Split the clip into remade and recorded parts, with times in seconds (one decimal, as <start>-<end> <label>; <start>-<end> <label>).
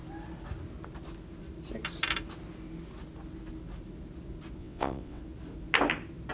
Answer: 0.0-4.6 recorded; 4.6-5.2 remade; 5.2-6.3 recorded